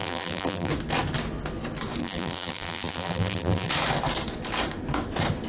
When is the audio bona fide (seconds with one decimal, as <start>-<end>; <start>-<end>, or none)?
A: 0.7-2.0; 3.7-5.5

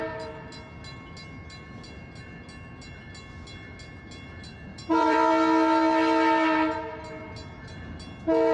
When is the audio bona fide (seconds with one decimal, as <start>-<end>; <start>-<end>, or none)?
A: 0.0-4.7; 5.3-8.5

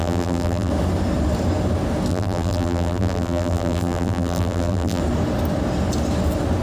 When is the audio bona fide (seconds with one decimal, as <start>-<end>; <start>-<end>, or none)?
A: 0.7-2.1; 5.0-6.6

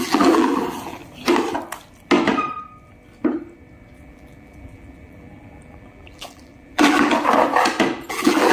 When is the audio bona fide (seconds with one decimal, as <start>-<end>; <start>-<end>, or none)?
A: 1.0-3.9; 7.1-7.9

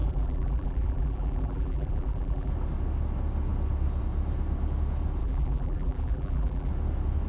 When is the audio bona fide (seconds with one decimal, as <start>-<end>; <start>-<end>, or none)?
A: 2.5-5.2; 6.7-7.3

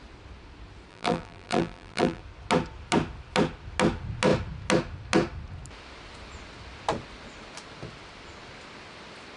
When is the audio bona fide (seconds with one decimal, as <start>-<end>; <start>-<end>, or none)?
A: 0.0-0.9; 2.2-9.4

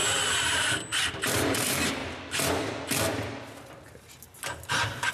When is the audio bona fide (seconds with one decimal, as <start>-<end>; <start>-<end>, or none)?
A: 0.0-0.5; 2.0-5.1